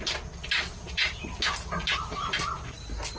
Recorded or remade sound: recorded